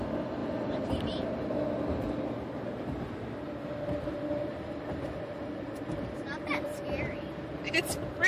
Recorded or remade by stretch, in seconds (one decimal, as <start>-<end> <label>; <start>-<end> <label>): 0.0-0.4 recorded; 0.4-1.5 remade; 1.5-4.5 recorded; 4.5-7.7 remade; 7.7-8.3 recorded